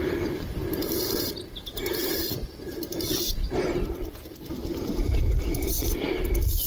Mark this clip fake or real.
real